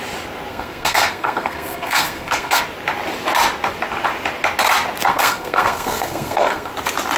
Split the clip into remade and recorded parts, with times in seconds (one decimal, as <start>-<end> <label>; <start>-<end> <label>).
0.0-0.5 recorded; 0.5-2.6 remade; 2.6-5.1 recorded; 5.1-6.7 remade; 6.7-7.2 recorded